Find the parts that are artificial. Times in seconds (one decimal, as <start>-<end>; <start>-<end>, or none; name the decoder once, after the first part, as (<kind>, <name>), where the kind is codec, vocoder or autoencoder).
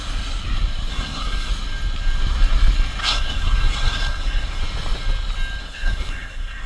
0.9-1.5 (codec, SNAC); 3.0-4.6; 5.6-6.7